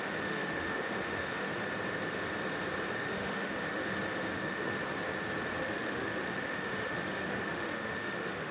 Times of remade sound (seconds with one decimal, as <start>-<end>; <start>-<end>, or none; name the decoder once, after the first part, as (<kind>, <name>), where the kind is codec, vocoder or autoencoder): 0.0-1.5 (autoencoder, DAC-VAE); 3.0-3.8; 4.3-4.8; 5.6-8.5